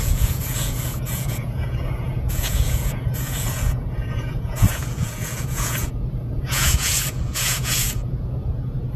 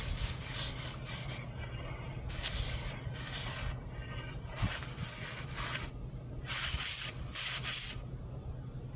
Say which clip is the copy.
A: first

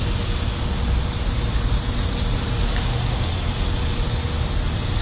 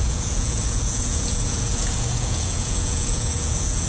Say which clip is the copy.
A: second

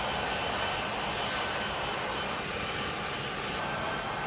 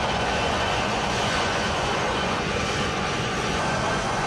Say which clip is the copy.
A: second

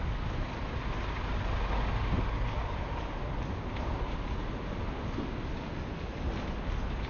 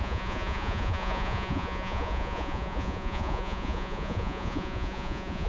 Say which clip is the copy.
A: second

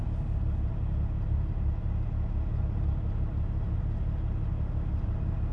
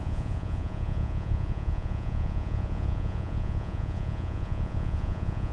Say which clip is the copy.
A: second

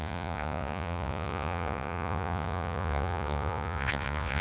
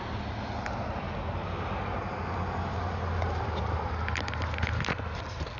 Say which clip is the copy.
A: first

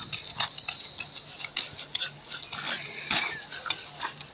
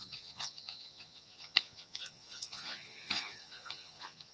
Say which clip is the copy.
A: second